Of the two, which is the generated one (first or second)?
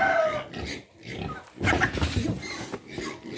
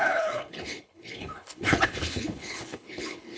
second